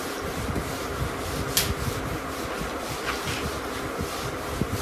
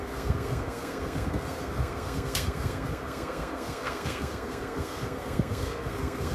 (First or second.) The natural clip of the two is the first